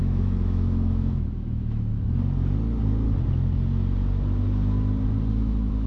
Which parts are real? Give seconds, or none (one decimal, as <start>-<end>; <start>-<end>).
1.9-5.3